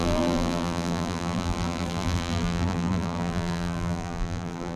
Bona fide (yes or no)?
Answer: no